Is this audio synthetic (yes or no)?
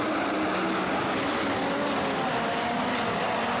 no